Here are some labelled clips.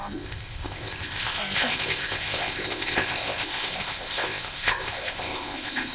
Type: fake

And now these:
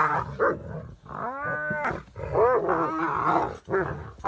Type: real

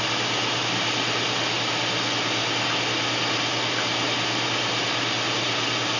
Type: real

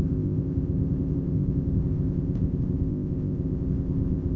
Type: fake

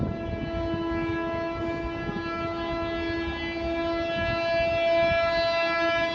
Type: real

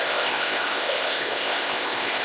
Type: fake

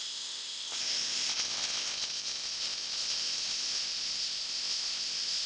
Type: fake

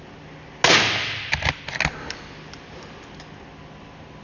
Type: real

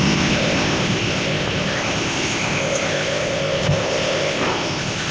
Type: fake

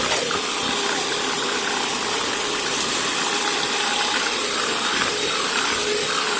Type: real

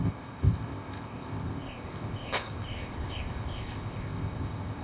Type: fake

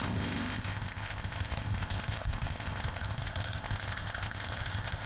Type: fake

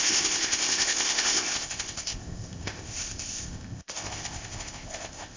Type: fake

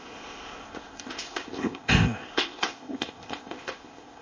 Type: fake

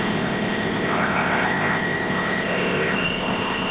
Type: fake